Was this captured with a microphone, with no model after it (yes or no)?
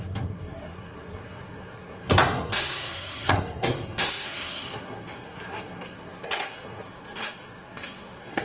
no